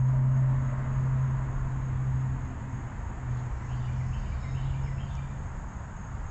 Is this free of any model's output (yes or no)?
yes